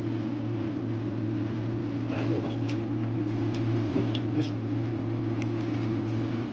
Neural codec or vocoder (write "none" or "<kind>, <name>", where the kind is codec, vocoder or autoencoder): none